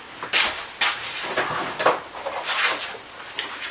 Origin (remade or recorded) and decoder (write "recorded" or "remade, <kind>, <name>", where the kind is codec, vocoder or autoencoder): recorded